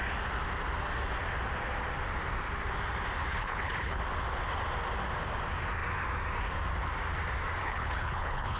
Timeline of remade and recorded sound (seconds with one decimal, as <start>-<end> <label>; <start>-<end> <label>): 0.0-3.3 recorded; 3.3-4.0 remade; 4.0-7.6 recorded; 7.6-8.6 remade